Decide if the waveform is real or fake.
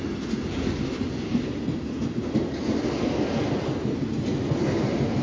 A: real